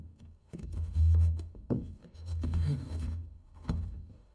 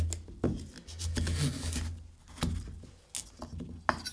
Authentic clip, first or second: second